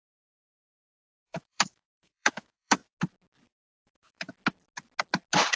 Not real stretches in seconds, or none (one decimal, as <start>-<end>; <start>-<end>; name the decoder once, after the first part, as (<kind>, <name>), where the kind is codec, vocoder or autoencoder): 0.8-2.8 (autoencoder, DAC-VAE); 3.7-4.3